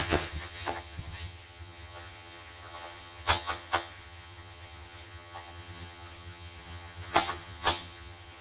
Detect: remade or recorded remade